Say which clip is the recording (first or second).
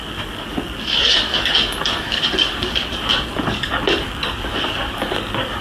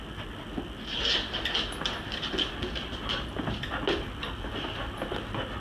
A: second